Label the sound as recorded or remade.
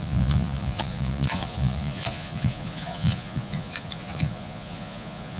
remade